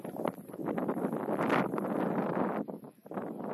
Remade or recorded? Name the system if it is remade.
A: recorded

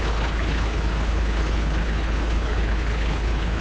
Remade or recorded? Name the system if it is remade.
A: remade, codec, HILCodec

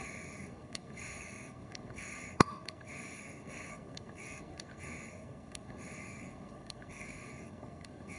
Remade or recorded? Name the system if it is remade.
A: remade, codec, SNAC